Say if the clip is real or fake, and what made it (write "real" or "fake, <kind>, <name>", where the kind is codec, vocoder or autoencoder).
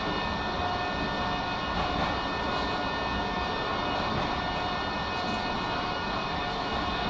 real